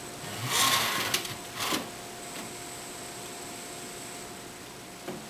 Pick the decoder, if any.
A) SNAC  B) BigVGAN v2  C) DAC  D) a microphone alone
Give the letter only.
D